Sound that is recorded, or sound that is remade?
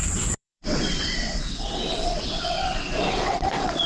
remade